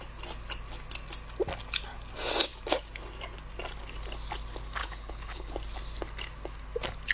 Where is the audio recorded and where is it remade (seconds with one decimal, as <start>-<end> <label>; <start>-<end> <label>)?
0.0-4.8 recorded; 4.8-5.5 remade; 5.5-7.1 recorded